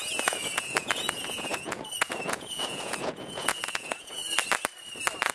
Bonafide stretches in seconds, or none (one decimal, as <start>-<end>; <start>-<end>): 4.2-5.3